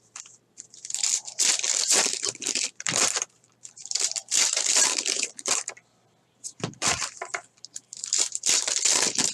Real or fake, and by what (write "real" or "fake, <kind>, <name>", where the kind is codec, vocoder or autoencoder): fake, vocoder, BigVGAN v2